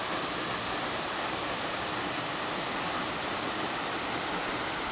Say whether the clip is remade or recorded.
recorded